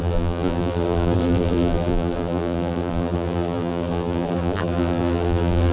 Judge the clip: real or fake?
fake